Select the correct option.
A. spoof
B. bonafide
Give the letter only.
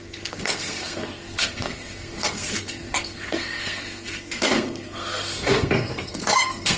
A